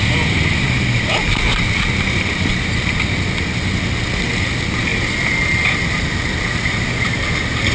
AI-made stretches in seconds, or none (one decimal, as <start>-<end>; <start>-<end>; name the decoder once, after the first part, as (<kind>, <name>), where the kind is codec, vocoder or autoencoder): none